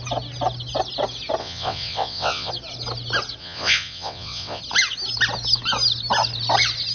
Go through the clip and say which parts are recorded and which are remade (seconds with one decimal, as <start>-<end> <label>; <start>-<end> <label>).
0.0-1.4 recorded; 1.4-2.5 remade; 2.5-3.4 recorded; 3.4-4.6 remade; 4.6-6.9 recorded